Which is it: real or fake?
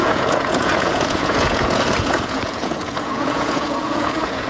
fake